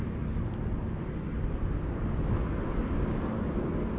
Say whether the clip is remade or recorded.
recorded